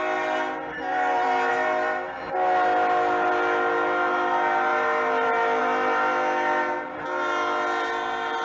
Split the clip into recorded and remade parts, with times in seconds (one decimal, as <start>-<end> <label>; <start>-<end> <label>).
0.0-0.9 recorded; 0.9-1.5 remade; 1.5-4.7 recorded; 4.7-5.6 remade; 5.6-8.4 recorded

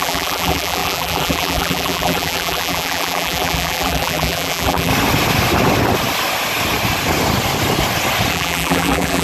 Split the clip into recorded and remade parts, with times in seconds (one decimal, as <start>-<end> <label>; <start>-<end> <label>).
0.0-4.9 remade; 4.9-8.3 recorded; 8.3-9.2 remade